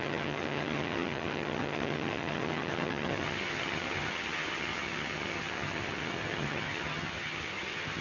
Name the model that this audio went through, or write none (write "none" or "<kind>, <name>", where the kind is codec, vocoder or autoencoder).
vocoder, HiFi-GAN